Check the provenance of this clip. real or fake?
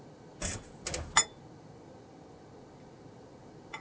real